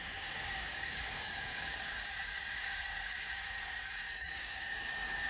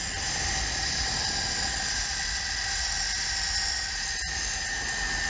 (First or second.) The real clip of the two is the second